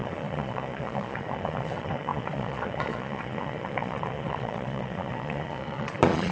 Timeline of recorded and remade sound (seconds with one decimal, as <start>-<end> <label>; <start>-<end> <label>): 0.0-6.3 remade